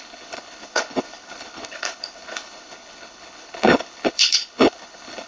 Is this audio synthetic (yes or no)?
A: yes